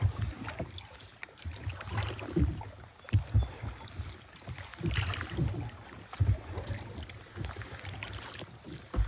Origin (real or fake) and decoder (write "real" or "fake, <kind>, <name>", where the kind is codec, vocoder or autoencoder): real